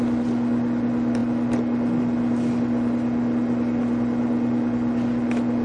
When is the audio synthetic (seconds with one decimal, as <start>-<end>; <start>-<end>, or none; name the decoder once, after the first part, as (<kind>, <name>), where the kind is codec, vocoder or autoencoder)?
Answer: none